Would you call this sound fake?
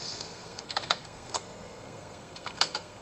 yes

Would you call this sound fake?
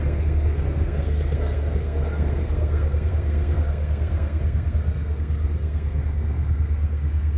yes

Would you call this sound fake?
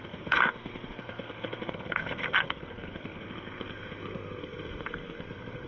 yes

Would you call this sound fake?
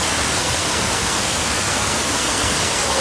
yes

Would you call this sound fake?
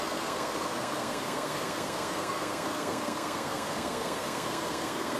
yes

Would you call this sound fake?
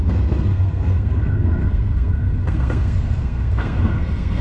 yes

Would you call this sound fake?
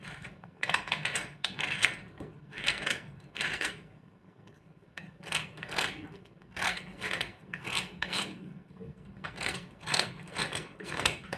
yes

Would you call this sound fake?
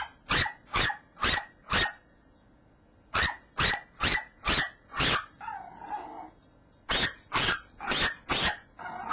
no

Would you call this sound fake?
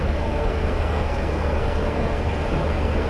yes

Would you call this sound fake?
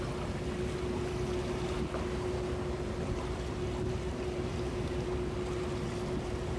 no